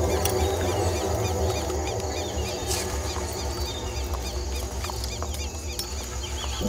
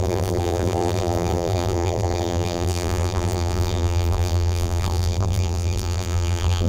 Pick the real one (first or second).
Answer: first